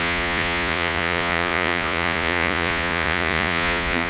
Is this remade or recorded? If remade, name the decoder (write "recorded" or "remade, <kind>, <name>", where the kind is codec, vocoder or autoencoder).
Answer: remade, vocoder, Vocos